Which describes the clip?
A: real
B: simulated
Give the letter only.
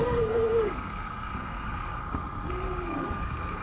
B